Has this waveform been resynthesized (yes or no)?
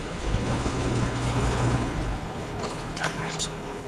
yes